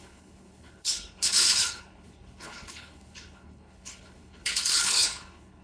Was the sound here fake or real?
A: fake